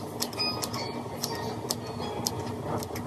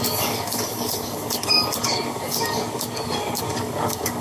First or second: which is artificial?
second